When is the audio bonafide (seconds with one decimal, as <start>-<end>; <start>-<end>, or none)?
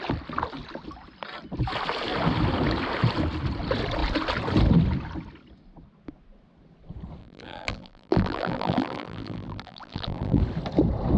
0.0-7.2; 10.4-11.2